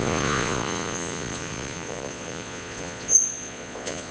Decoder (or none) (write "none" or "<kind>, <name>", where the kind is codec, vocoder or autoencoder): vocoder, Vocos